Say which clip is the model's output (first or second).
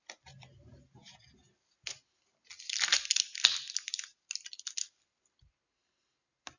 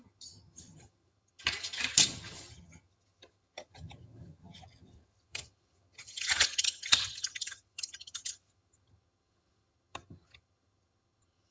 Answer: second